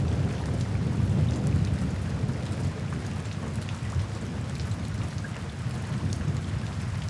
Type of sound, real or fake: real